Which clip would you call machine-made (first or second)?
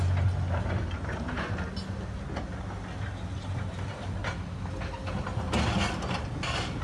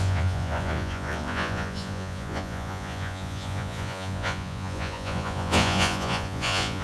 second